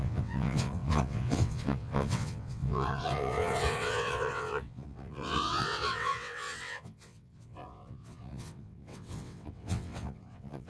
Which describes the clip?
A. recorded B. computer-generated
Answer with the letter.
B